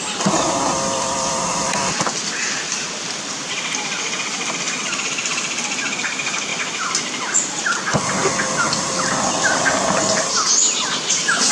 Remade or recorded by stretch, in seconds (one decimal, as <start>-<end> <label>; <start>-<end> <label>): 0.0-6.5 recorded; 6.5-7.6 remade; 7.6-11.5 recorded